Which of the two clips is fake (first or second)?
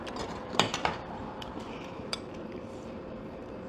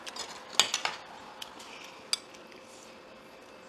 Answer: first